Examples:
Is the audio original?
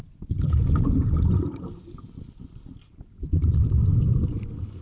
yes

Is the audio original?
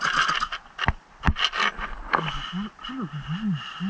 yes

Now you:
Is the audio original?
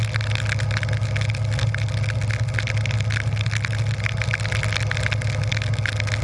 yes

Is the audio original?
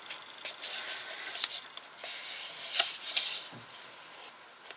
yes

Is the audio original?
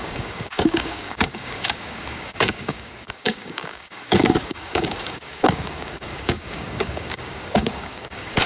no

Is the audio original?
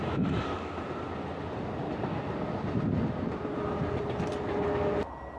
yes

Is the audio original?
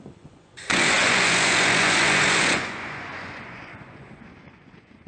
no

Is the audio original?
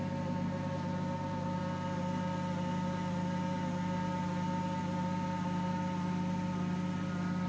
yes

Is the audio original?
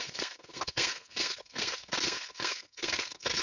no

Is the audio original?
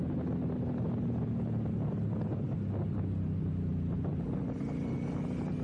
yes